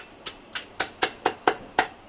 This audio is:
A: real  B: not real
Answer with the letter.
A